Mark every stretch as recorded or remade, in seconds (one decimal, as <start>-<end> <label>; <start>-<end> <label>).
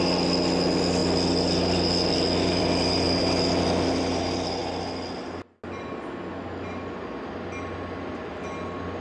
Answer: 0.0-2.6 recorded; 2.6-3.2 remade; 3.2-9.0 recorded